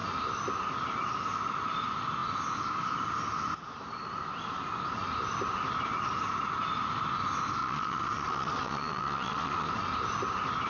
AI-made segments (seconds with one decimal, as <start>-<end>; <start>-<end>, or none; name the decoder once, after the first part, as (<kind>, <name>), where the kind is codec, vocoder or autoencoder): 7.6-9.7 (vocoder, Vocos)